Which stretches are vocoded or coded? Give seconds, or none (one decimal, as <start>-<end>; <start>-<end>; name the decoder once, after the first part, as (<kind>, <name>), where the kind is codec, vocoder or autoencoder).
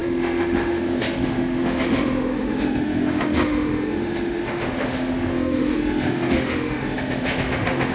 0.0-7.9 (autoencoder, DAC-VAE)